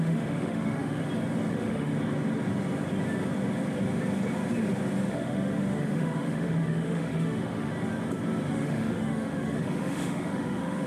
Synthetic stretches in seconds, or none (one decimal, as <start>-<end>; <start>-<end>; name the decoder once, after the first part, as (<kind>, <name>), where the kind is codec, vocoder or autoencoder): 0.0-1.0 (autoencoder, DAC-VAE); 1.5-1.9; 5.1-7.7; 8.5-10.9